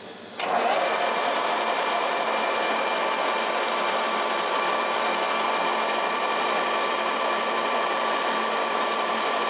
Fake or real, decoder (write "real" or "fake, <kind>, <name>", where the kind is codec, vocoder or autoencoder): real